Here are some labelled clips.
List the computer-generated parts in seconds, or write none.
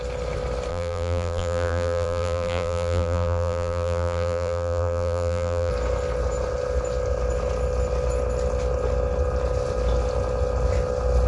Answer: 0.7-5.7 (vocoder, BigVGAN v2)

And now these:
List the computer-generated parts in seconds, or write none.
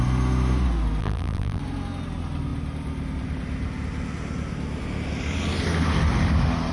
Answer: 1.0-1.6 (vocoder, BigVGAN v2)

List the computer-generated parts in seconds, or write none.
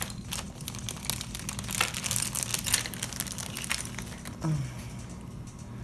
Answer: none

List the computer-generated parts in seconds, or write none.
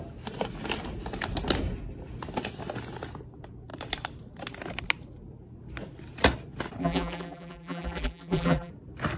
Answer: 6.8-8.7 (vocoder, BigVGAN v2)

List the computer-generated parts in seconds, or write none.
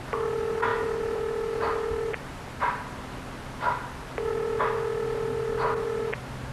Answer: none